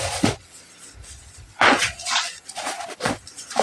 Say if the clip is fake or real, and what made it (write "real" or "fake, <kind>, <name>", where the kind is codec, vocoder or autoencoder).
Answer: fake, vocoder, Vocos